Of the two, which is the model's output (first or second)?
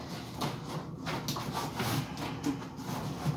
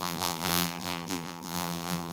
second